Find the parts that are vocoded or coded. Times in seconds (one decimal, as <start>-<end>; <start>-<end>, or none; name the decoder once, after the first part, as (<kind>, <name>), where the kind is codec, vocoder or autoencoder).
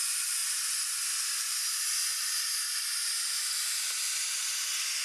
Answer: none